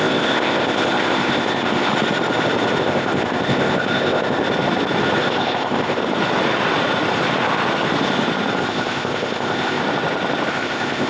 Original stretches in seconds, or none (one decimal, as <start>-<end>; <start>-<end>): 1.9-2.8; 4.4-5.2; 6.0-8.6; 9.8-10.5